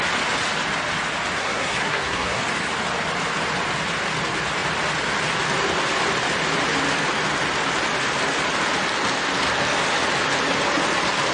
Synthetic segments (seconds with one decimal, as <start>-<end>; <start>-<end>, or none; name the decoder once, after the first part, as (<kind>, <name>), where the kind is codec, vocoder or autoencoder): 1.4-2.4 (codec, SNAC)